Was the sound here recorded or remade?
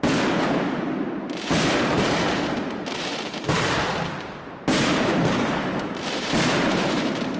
remade